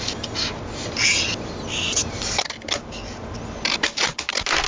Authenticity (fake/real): real